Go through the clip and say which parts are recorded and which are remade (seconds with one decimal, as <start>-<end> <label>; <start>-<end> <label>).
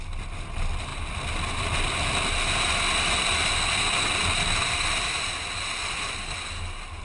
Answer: 0.0-7.0 recorded